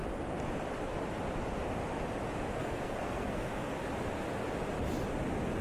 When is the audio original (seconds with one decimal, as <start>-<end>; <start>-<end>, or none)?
0.0-2.6; 3.7-5.6